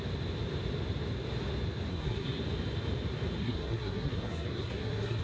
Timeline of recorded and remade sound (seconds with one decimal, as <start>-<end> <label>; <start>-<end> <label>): 0.0-1.9 recorded; 1.9-2.4 remade; 2.4-3.4 recorded; 3.4-5.2 remade